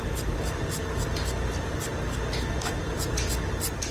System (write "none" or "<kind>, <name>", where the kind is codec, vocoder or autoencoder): none